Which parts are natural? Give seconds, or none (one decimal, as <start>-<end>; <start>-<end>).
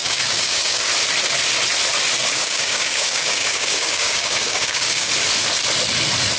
0.9-2.2; 5.1-6.4